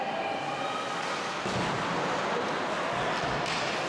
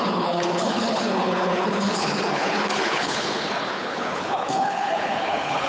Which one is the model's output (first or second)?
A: second